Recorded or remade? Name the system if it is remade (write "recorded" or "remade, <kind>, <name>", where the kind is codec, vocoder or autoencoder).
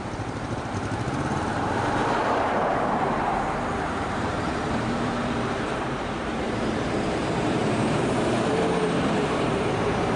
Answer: remade, vocoder, BigVGAN v2